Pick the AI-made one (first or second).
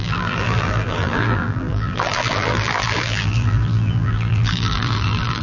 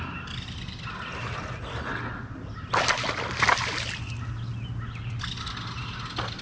first